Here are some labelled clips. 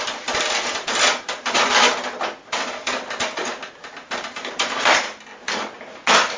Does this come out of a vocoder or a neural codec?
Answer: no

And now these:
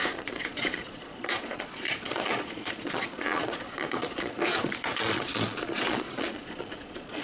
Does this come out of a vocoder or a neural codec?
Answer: yes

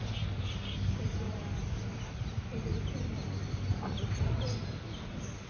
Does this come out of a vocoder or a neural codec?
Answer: no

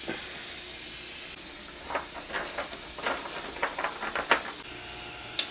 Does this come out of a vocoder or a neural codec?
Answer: no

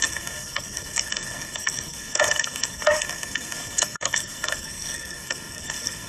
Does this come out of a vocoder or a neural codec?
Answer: yes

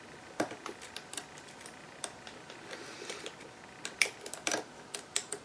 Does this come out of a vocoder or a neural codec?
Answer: no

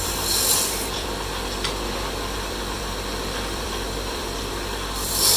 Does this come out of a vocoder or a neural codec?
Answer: yes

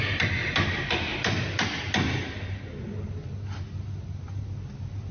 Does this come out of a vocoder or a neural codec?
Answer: no